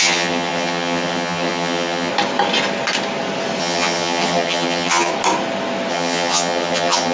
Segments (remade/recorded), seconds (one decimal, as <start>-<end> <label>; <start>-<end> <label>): 0.0-2.1 remade; 2.1-3.6 recorded; 3.6-5.1 remade; 5.1-5.9 recorded; 5.9-7.1 remade